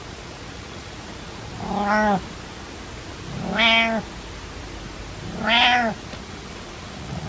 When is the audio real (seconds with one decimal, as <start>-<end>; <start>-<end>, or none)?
1.5-5.9